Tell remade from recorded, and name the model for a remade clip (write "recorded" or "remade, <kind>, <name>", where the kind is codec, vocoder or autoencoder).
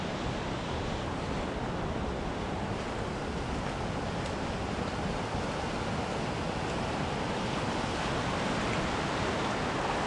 recorded